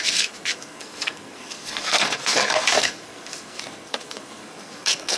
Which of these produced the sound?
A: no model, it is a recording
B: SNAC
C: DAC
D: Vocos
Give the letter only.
B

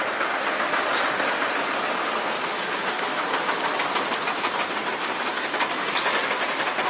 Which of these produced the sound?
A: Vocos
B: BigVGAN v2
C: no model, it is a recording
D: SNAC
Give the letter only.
C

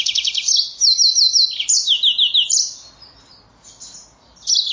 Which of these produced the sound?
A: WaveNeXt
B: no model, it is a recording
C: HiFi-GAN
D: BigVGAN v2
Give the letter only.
B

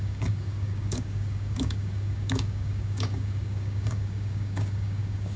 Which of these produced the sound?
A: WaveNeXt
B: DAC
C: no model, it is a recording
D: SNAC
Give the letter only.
B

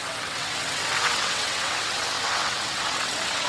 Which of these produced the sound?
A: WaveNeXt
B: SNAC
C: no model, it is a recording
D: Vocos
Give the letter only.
A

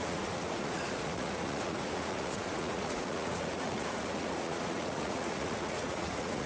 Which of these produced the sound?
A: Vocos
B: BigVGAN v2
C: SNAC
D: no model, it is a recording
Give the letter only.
A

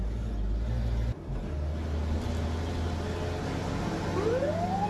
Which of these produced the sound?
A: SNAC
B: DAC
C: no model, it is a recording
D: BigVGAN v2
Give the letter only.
C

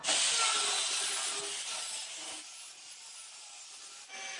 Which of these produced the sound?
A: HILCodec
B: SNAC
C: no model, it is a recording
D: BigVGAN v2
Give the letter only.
C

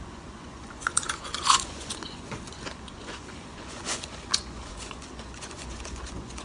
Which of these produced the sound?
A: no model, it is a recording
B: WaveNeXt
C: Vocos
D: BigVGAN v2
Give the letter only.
C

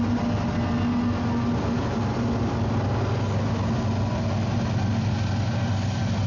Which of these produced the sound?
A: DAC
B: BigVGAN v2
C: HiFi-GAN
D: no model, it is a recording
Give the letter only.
D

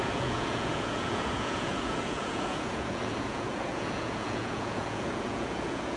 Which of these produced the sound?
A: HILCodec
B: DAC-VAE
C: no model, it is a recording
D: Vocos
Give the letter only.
D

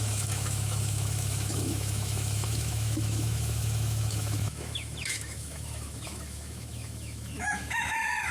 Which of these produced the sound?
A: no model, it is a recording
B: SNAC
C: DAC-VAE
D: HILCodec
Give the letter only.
C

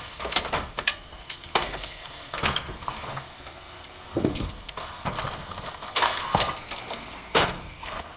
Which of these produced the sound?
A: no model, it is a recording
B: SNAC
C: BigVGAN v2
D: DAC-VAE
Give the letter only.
B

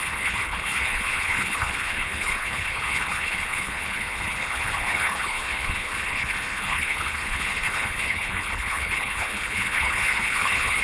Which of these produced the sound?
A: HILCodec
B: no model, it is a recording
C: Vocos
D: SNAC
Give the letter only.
A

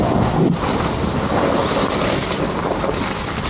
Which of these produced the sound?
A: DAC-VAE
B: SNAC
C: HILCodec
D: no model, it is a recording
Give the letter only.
D